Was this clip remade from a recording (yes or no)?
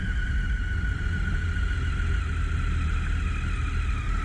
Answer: no